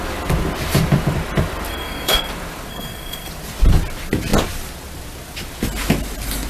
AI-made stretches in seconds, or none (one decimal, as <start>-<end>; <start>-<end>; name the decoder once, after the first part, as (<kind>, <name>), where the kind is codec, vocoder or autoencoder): 1.7-2.3 (codec, SNAC); 2.7-3.3